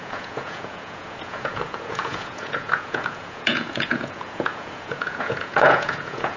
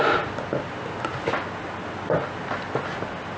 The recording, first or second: second